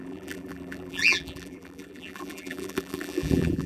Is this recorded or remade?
remade